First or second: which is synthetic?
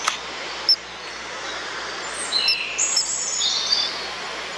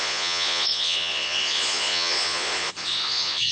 second